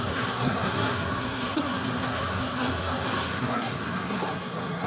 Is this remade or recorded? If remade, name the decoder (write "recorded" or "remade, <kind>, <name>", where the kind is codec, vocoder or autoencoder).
remade, codec, SNAC